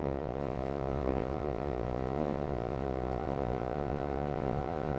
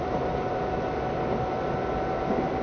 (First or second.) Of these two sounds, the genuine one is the second